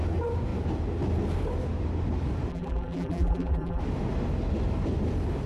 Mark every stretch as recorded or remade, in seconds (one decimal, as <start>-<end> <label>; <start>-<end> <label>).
0.0-2.5 recorded; 2.5-3.8 remade; 3.8-5.5 recorded